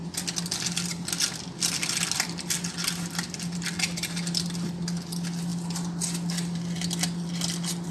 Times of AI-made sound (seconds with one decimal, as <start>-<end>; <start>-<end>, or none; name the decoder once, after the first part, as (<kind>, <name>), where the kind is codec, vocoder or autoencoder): none